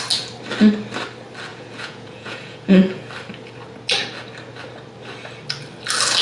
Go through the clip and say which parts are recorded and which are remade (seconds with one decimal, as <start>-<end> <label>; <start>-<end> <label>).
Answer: 0.0-1.5 recorded; 1.5-3.0 remade; 3.0-6.2 recorded